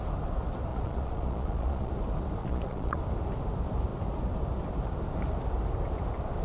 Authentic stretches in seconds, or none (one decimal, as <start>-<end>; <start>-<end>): 0.0-0.7; 1.9-2.4; 3.0-6.4